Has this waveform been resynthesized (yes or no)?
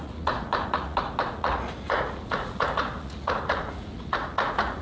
yes